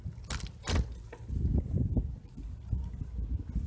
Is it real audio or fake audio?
real